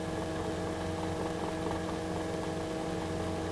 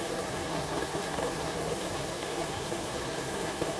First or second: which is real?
first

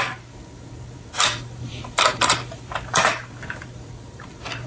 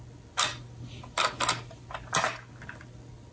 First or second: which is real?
second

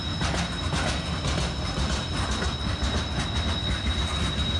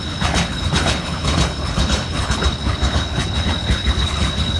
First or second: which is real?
first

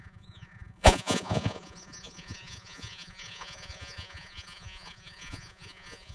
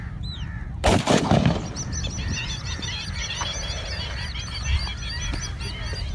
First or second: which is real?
second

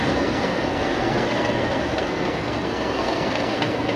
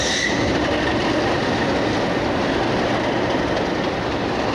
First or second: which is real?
second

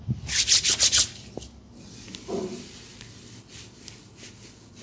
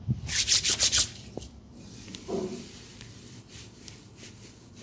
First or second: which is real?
first